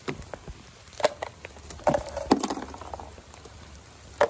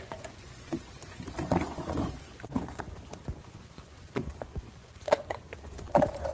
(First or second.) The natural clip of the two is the first